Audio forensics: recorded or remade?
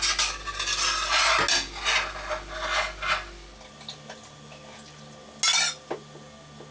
recorded